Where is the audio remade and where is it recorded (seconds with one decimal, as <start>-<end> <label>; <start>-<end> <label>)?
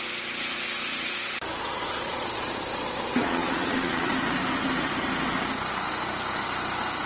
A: 0.0-1.5 recorded; 1.5-4.1 remade; 4.1-7.1 recorded